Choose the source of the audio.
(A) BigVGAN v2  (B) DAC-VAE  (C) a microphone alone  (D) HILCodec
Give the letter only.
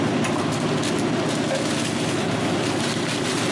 C